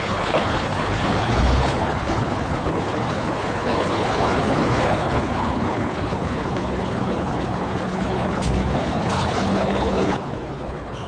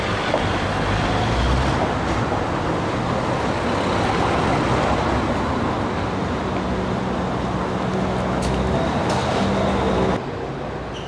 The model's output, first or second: first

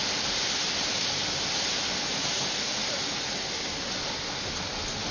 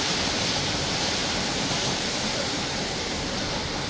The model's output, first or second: second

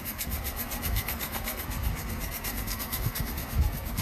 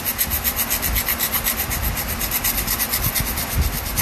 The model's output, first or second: first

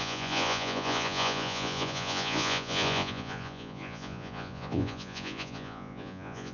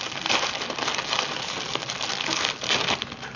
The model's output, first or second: first